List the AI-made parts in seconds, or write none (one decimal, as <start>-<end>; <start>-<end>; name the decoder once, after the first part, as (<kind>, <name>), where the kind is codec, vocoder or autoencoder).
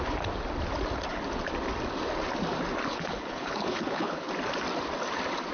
2.9-4.3 (codec, HILCodec)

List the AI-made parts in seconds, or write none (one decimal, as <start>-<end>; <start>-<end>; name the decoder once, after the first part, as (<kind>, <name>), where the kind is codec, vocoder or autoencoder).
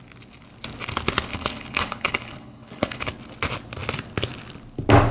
1.3-3.1 (codec, HILCodec)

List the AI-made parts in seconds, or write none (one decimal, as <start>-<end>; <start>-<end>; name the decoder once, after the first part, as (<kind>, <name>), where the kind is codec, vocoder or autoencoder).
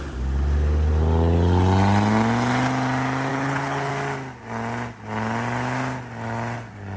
3.3-3.9 (codec, HILCodec)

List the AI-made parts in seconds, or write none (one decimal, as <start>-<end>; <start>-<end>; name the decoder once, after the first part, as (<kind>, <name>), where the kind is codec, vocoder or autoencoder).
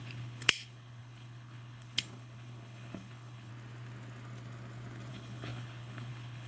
0.0-3.5 (codec, HILCodec); 5.1-6.5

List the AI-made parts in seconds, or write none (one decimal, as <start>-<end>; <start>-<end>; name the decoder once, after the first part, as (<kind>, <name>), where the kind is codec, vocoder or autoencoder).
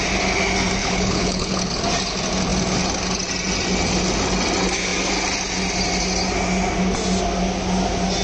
0.8-1.6 (codec, HILCodec)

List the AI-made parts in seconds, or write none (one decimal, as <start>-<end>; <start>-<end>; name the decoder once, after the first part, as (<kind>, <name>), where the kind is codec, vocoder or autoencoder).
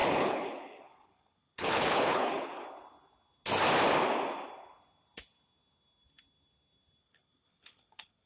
0.0-2.6 (codec, HILCodec); 7.0-8.3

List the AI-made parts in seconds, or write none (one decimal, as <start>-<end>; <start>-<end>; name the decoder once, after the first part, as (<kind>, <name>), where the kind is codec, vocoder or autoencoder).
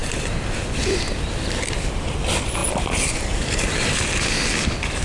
none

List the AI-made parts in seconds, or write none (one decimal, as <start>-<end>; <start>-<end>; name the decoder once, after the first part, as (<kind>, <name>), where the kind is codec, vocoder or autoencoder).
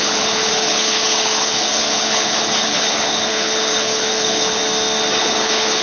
0.0-4.6 (codec, HILCodec); 5.2-5.8